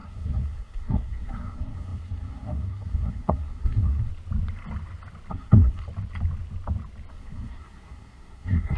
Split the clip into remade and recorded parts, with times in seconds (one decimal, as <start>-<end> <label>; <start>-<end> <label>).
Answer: 0.0-4.1 remade; 4.1-5.3 recorded; 5.3-5.8 remade; 5.8-7.1 recorded; 7.1-8.8 remade